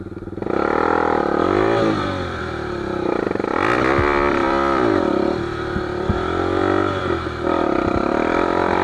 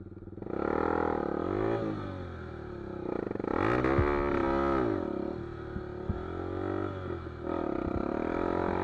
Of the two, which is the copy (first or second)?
first